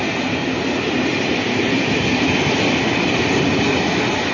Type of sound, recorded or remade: recorded